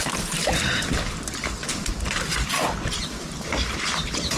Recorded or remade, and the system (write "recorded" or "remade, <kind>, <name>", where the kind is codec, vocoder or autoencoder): recorded